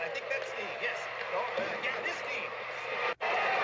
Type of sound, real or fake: real